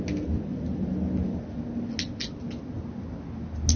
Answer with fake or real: real